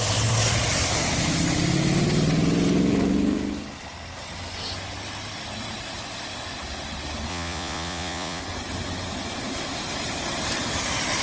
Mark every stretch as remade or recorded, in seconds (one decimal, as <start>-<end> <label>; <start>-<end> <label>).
0.0-7.3 recorded; 7.3-8.4 remade; 8.4-11.2 recorded